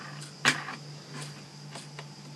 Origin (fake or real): real